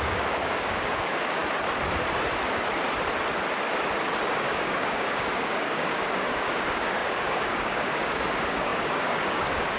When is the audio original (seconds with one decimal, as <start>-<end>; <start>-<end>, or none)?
1.4-4.3